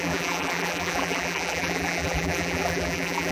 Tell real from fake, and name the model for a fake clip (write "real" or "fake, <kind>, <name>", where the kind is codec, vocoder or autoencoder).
fake, vocoder, BigVGAN v2